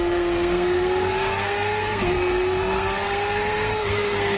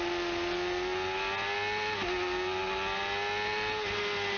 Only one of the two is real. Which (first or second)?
second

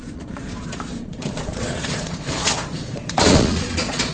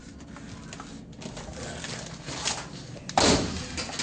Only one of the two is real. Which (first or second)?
second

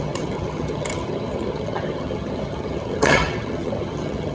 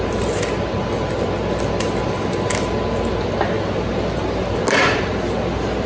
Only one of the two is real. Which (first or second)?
second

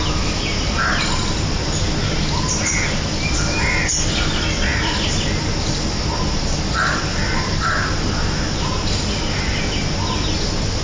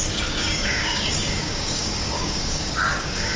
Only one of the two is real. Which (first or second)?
first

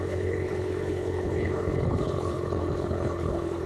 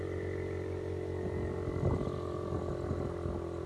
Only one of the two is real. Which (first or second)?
second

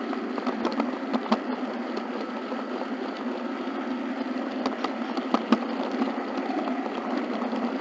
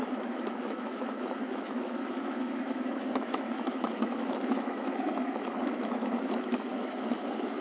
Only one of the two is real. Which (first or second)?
first